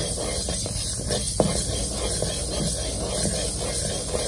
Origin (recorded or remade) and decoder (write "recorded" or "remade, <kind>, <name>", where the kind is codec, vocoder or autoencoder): recorded